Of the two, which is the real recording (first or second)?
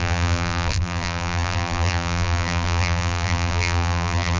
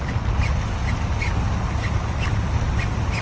second